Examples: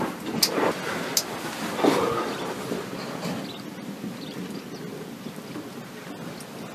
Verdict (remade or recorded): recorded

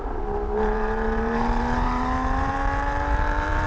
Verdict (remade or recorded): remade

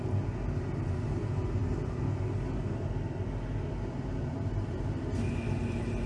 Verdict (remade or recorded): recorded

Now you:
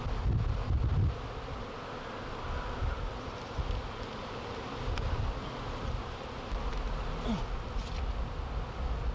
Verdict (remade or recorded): recorded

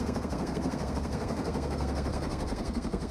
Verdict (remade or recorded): remade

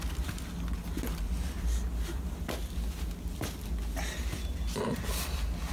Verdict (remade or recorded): recorded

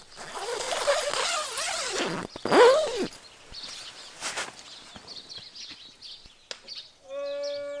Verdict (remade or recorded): recorded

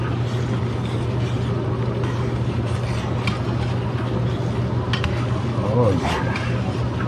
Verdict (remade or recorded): recorded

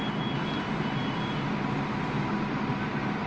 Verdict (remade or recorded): recorded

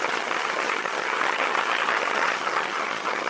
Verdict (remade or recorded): remade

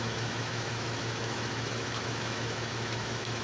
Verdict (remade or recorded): remade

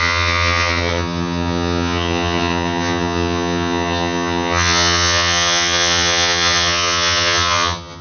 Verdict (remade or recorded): remade